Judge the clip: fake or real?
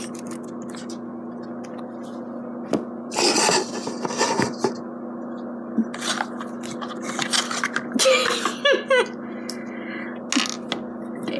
real